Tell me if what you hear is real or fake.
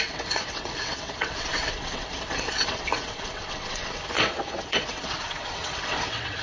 fake